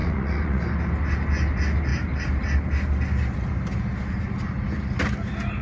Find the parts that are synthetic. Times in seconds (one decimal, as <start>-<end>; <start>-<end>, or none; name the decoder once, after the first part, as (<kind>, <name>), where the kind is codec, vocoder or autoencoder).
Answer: 0.0-0.6 (vocoder, Vocos)